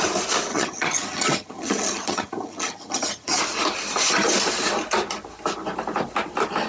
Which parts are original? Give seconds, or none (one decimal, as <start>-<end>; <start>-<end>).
0.0-0.5; 3.4-6.7